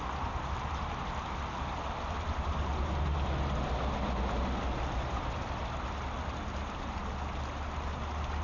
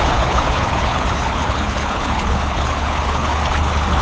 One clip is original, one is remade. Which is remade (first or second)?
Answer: second